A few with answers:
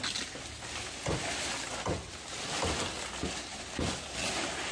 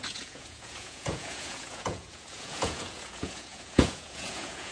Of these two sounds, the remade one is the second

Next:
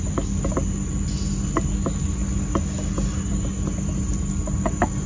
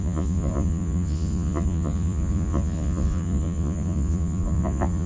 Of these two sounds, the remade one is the second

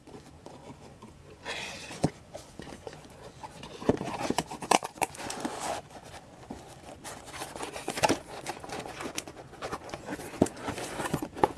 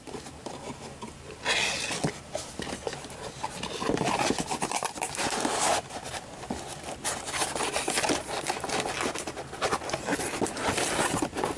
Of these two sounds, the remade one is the first